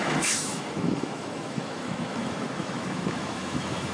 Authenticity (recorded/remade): remade